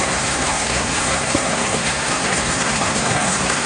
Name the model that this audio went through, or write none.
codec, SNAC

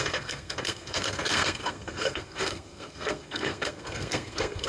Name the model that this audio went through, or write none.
codec, SNAC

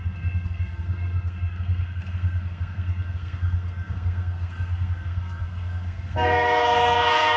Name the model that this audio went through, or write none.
codec, SNAC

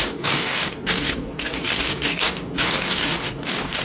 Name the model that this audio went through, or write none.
codec, DAC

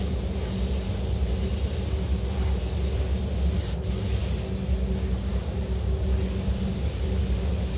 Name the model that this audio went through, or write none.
none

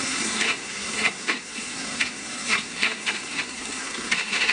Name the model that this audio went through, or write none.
codec, SNAC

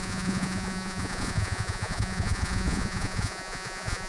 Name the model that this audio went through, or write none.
vocoder, Vocos